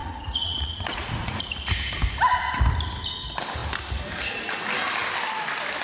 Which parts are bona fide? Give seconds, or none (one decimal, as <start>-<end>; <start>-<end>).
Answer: 1.5-5.8